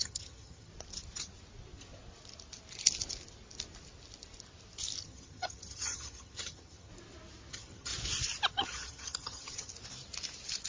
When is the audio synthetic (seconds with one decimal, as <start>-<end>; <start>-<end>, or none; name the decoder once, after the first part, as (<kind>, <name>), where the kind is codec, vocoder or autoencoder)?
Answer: 0.0-0.7 (vocoder, HiFi-GAN); 5.0-6.9; 7.5-7.9; 8.5-9.7